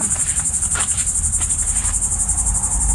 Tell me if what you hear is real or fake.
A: fake